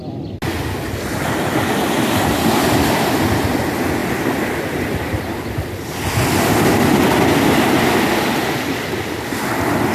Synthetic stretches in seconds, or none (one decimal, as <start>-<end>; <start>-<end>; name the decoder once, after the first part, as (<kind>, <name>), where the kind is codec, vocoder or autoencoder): 4.0-4.5 (vocoder, BigVGAN v2)